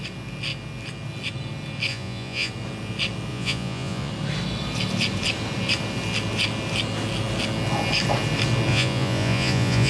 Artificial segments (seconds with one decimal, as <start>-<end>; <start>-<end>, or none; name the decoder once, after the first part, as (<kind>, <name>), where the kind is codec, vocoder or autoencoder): 1.9-2.5 (vocoder, Vocos); 3.3-4.1; 8.7-9.9